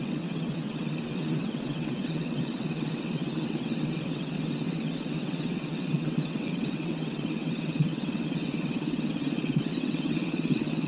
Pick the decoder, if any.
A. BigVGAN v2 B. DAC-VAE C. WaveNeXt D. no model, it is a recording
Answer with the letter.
C